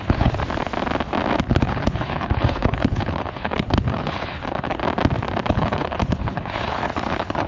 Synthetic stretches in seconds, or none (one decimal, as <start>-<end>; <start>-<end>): 0.0-0.4; 1.4-4.8; 5.5-7.5